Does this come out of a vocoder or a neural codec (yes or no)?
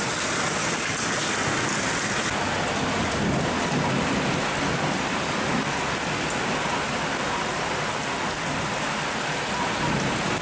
no